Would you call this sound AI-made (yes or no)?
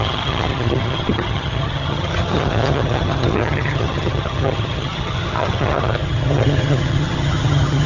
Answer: yes